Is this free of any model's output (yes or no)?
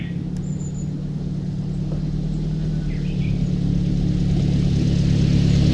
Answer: yes